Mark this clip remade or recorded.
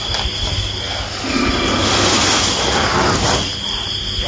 recorded